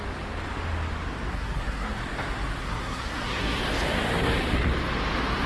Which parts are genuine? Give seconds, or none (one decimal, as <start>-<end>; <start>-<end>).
0.0-1.3; 2.0-2.6; 3.6-5.5